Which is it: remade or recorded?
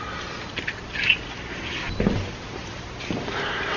recorded